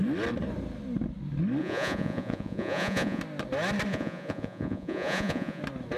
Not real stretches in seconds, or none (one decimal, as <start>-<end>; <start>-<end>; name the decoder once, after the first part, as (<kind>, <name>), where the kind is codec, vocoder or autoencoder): 1.6-3.2 (vocoder, Vocos); 3.9-5.6